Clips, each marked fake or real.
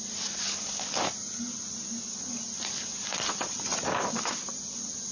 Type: real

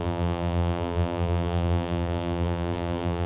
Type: fake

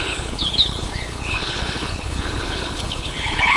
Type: fake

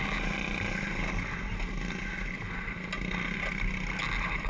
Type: real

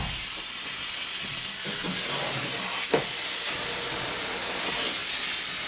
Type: real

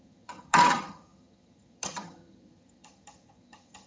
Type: fake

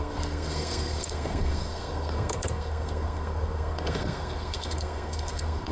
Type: fake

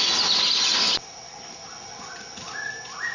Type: real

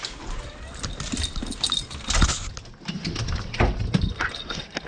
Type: real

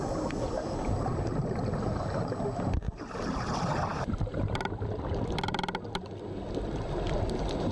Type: real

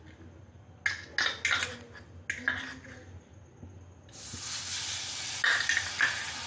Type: real